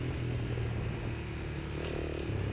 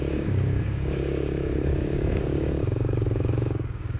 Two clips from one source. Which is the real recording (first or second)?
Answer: first